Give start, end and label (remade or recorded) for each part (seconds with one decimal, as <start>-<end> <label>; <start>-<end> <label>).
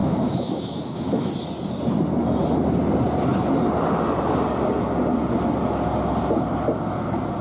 0.0-1.3 remade; 1.3-7.4 recorded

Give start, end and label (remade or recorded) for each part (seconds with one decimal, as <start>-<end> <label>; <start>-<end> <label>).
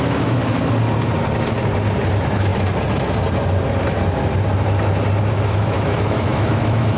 0.0-0.4 remade; 0.4-2.1 recorded; 2.1-2.5 remade; 2.5-5.3 recorded; 5.3-7.0 remade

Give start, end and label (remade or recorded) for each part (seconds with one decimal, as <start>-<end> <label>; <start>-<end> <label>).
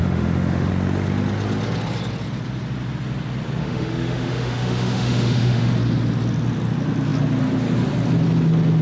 0.0-0.7 remade; 0.7-3.6 recorded; 3.6-5.7 remade; 5.7-8.8 recorded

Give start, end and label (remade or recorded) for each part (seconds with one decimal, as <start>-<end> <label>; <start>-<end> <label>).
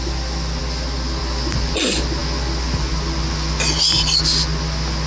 0.0-5.1 recorded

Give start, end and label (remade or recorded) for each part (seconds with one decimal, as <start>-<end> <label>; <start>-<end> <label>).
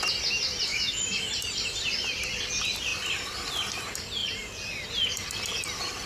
0.0-0.7 recorded; 0.7-1.3 remade; 1.3-6.1 recorded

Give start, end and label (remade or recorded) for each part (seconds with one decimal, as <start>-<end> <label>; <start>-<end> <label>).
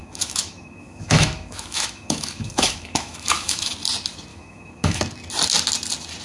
0.0-3.7 remade; 3.7-4.3 recorded; 4.3-5.0 remade; 5.0-6.2 recorded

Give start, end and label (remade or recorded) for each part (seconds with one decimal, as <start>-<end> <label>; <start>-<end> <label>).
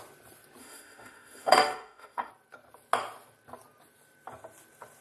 0.0-0.6 recorded; 0.6-2.3 remade; 2.3-5.0 recorded